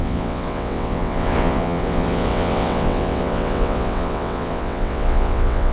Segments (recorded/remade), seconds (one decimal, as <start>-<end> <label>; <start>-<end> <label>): 0.0-5.7 remade